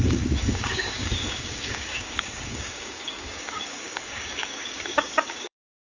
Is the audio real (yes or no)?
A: no